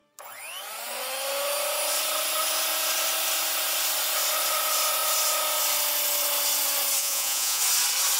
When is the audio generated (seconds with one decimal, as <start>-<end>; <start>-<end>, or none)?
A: 7.0-7.6